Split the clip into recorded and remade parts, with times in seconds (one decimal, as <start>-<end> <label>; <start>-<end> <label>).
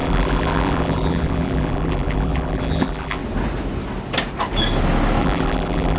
0.0-3.2 remade; 3.2-5.2 recorded; 5.2-6.0 remade